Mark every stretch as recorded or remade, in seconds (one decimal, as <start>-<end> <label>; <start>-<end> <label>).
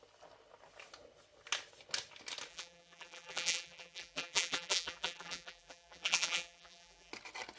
0.0-2.5 recorded; 2.5-7.1 remade; 7.1-7.6 recorded